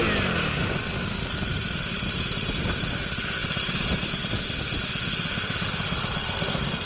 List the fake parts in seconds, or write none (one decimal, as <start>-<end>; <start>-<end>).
0.6-3.0; 3.4-4.4